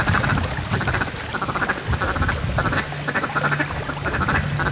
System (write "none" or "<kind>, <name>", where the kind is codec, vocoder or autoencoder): none